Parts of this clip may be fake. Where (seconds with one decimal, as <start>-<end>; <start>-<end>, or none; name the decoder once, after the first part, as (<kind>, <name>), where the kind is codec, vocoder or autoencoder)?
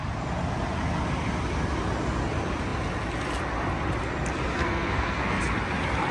4.6-5.4 (codec, SNAC)